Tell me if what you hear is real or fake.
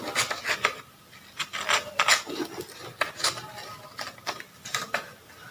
real